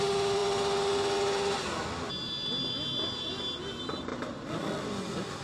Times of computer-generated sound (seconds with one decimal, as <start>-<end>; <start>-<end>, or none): none